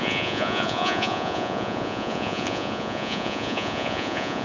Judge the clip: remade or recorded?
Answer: remade